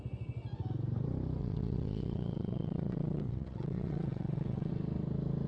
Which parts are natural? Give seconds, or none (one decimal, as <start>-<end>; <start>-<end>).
0.0-1.4; 4.7-5.5